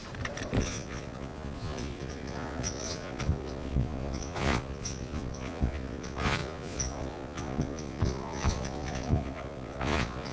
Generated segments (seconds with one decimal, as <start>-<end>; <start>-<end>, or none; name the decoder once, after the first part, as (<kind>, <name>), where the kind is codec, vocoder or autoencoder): 0.6-10.3 (vocoder, Vocos)